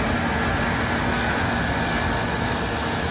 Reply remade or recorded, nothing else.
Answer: recorded